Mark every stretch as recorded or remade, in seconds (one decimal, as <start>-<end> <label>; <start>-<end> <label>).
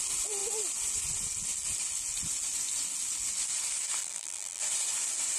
0.0-4.0 recorded; 4.0-4.6 remade; 4.6-5.4 recorded